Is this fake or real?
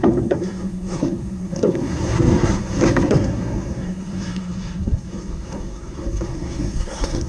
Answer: fake